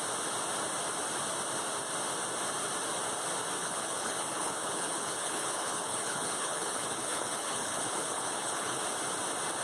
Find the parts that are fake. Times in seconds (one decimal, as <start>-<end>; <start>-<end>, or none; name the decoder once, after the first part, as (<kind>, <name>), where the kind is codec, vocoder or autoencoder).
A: 3.6-8.8 (codec, HILCodec)